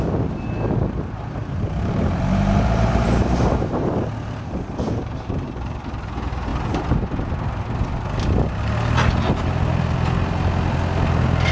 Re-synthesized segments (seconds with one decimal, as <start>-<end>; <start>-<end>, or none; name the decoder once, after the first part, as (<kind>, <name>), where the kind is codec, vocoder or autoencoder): 1.4-6.1 (vocoder, BigVGAN v2)